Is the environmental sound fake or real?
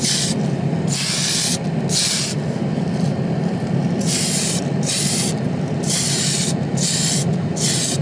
real